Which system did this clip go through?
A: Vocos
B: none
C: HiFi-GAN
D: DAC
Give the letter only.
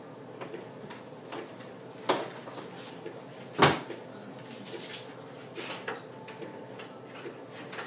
B